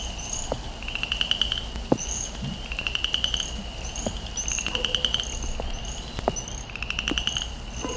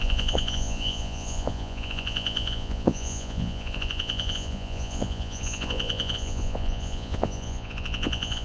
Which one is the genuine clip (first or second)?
first